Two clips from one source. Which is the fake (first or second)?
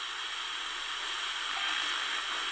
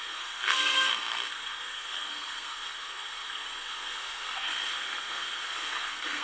second